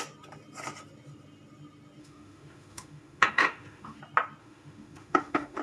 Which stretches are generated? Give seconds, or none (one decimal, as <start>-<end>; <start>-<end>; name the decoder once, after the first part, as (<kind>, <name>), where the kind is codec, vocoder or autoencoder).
2.0-4.0 (autoencoder, DAC-VAE); 4.4-5.6

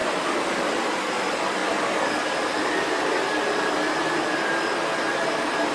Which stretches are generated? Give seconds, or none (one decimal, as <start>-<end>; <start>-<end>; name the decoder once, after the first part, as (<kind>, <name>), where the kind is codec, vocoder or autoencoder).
none

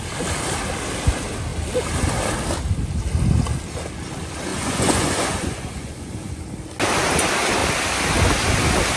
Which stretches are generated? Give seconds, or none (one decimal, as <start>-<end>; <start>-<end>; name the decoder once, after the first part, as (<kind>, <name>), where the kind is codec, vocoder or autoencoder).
4.5-6.4 (vocoder, Vocos)